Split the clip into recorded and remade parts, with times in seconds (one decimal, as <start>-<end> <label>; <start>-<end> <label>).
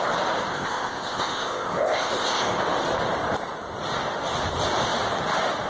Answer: 0.0-0.5 recorded; 0.5-2.6 remade; 2.6-5.7 recorded